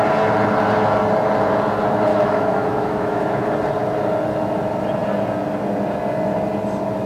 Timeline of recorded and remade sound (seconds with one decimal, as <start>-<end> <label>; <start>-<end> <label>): 0.0-2.1 recorded; 2.1-3.4 remade; 3.4-7.1 recorded